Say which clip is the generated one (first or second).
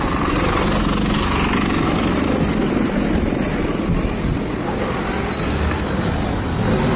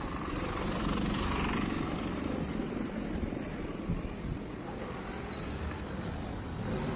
second